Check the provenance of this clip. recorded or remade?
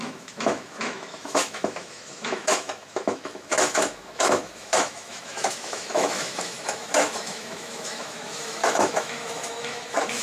remade